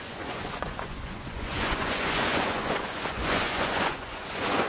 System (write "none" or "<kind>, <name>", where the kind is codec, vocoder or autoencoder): vocoder, Vocos